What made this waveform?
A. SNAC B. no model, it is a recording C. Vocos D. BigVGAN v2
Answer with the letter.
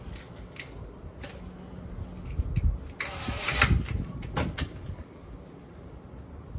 B